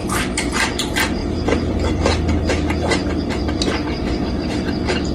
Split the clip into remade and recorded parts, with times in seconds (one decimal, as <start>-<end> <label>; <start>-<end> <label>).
0.0-0.5 recorded; 0.5-5.1 remade